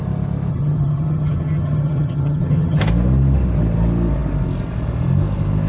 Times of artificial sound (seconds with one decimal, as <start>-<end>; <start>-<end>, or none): 0.5-2.8